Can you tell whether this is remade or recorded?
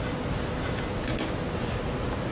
recorded